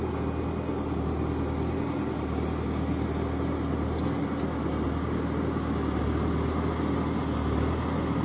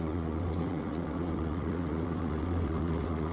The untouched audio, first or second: first